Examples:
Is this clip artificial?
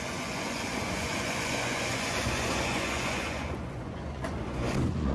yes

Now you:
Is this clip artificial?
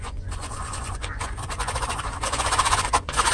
yes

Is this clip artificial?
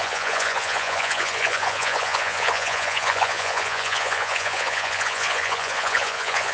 yes